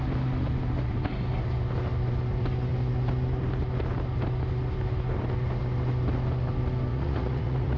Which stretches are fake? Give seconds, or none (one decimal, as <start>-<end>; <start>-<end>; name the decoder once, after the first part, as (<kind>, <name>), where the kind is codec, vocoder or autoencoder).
6.9-7.8 (vocoder, Vocos)